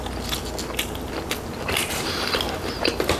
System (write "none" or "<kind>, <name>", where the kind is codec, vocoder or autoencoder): none